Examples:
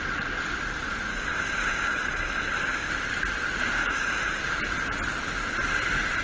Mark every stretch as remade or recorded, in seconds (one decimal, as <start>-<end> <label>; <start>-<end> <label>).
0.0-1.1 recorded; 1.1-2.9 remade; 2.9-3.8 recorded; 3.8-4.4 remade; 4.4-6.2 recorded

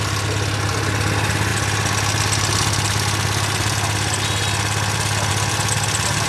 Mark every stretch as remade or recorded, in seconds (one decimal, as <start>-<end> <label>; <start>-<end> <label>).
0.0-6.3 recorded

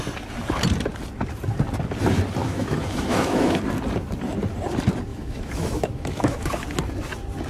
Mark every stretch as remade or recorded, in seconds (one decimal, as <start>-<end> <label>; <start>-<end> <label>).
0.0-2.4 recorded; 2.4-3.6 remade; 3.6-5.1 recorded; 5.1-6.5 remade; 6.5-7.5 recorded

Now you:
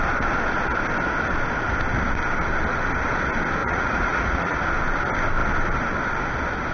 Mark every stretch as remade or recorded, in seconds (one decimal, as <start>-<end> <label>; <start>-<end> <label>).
0.0-3.6 recorded; 3.6-4.6 remade; 4.6-6.7 recorded

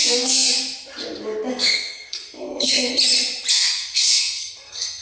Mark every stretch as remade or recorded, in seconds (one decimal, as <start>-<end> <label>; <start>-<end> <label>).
0.0-0.5 remade; 0.5-1.5 recorded; 1.5-2.9 remade; 2.9-3.5 recorded; 3.5-5.0 remade

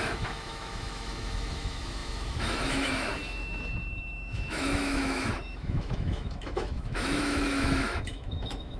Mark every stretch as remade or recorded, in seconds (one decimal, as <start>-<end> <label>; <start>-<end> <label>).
0.0-8.8 remade